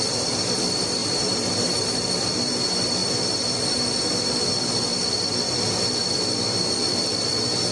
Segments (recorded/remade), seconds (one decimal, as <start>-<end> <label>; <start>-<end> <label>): 0.0-1.0 recorded; 1.0-2.1 remade; 2.1-7.7 recorded